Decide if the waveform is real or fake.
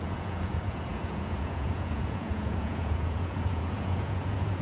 fake